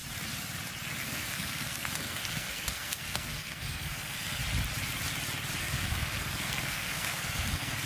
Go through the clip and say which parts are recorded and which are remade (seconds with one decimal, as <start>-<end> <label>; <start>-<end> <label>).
0.0-1.0 recorded; 1.0-4.4 remade; 4.4-5.6 recorded; 5.6-7.9 remade